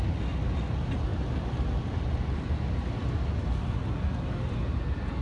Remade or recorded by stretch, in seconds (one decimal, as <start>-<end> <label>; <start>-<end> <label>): 0.0-5.2 recorded